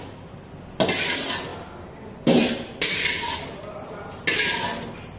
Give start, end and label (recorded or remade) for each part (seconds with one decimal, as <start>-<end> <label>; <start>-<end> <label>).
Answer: 0.0-5.2 recorded